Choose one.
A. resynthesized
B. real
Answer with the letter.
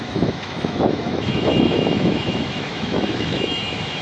A